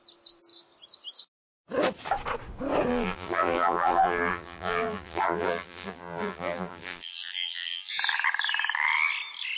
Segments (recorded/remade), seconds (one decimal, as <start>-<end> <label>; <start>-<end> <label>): 0.0-2.9 recorded; 2.9-7.9 remade; 7.9-9.6 recorded